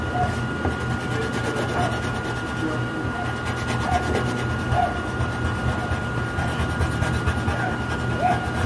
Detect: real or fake real